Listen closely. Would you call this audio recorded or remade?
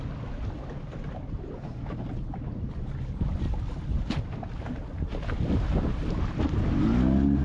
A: recorded